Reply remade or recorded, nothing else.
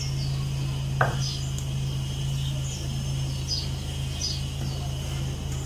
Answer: recorded